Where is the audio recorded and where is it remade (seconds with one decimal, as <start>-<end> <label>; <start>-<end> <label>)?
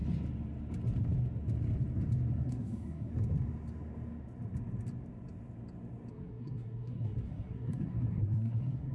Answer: 0.0-2.3 recorded; 2.3-3.1 remade; 3.1-6.1 recorded; 6.1-8.9 remade